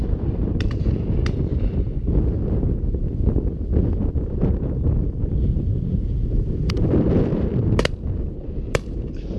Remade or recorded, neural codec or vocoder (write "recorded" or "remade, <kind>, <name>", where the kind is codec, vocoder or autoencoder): remade, vocoder, BigVGAN v2